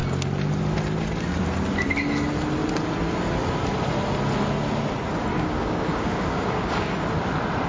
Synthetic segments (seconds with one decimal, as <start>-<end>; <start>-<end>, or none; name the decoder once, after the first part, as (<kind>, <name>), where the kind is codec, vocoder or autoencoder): 5.3-7.1 (codec, DAC)